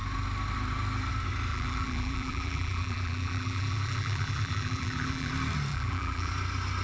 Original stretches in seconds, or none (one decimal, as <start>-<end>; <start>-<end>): 0.0-1.5; 5.3-5.7; 6.3-6.8